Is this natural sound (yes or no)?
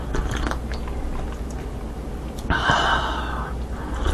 yes